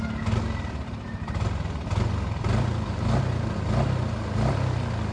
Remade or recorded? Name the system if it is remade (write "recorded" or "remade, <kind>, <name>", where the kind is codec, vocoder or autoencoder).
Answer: recorded